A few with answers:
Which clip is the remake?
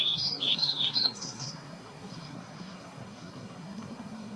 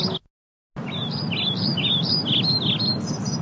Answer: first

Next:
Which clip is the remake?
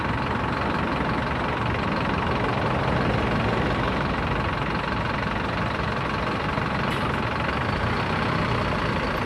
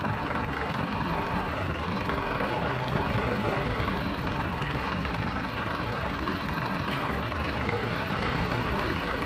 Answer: second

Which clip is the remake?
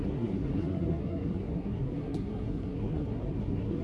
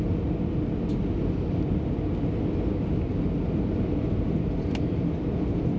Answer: first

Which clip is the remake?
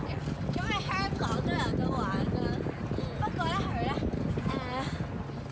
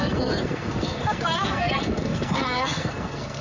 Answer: second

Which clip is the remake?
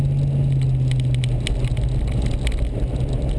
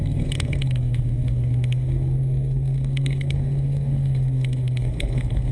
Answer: second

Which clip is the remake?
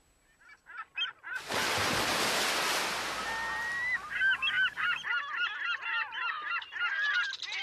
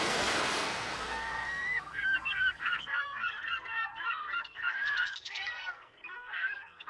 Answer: second